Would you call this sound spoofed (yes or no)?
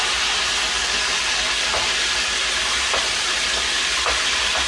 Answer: no